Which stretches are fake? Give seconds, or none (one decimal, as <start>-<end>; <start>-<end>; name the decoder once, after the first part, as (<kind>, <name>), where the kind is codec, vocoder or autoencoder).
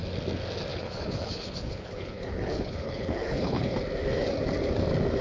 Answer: 0.7-3.8 (codec, HILCodec)